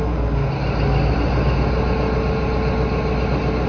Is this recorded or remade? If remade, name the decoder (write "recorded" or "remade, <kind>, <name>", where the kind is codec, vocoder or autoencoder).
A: recorded